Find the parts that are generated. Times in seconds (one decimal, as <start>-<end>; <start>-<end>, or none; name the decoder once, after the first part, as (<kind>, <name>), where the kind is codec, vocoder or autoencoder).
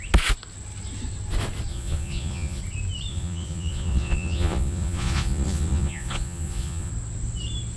1.7-2.6 (vocoder, Vocos); 3.1-6.9